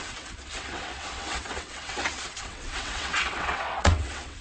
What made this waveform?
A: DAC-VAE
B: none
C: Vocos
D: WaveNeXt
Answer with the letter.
D